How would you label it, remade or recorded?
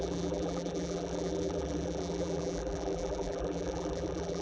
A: remade